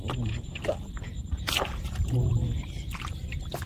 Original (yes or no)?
no